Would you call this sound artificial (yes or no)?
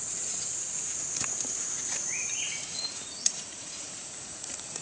yes